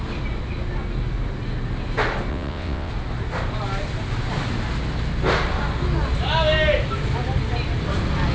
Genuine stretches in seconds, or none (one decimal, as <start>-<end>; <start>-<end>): 0.0-2.3; 2.9-8.3